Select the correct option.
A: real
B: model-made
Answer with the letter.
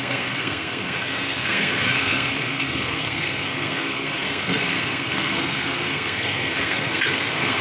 B